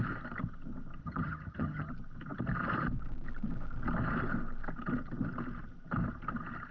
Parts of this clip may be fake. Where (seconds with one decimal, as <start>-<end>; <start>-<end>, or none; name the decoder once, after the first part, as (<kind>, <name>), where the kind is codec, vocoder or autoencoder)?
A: 1.0-1.9 (vocoder, HiFi-GAN)